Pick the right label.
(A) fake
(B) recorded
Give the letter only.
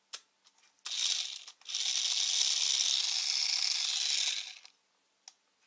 B